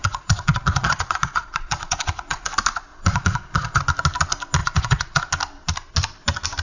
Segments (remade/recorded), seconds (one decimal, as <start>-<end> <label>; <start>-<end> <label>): 0.0-2.5 remade; 2.5-2.9 recorded; 2.9-3.8 remade; 3.8-4.6 recorded; 4.6-5.2 remade; 5.2-6.6 recorded